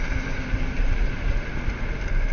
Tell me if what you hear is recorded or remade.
recorded